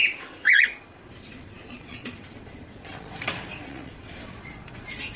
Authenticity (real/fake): fake